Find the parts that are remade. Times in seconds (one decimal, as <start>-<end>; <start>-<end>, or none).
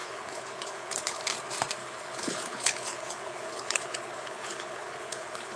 0.0-1.2; 1.8-5.6